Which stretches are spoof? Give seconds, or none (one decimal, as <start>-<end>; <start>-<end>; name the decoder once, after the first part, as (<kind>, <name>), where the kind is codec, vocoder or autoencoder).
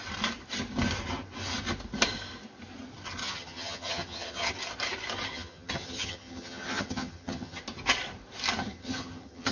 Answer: 3.2-4.5 (vocoder, HiFi-GAN); 5.3-7.6; 8.6-9.5